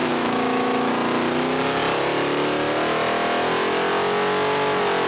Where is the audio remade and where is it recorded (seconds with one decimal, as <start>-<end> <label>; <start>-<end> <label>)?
0.0-0.9 remade; 0.9-5.1 recorded